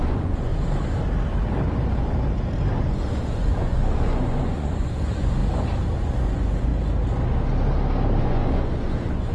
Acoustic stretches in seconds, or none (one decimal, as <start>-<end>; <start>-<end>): 0.5-2.8; 5.4-5.9; 6.7-8.2